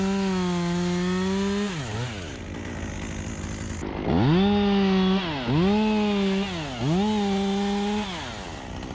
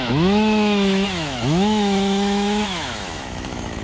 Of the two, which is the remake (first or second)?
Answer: second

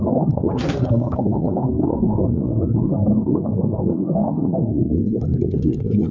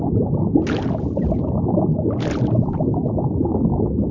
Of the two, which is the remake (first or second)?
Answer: first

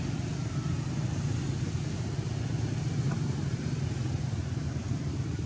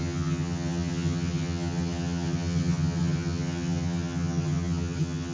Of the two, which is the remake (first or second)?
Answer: second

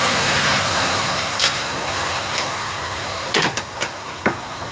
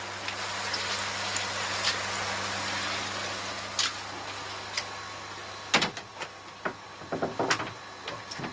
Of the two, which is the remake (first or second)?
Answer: first